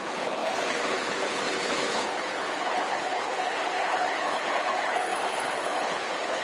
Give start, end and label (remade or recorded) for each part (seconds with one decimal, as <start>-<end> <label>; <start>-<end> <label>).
0.0-6.4 remade